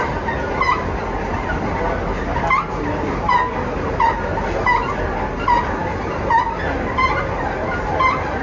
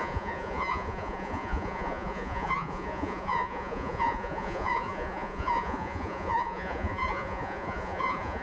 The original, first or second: first